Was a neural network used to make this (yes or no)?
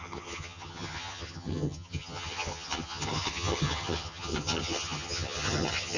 yes